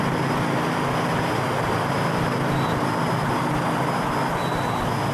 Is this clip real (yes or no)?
yes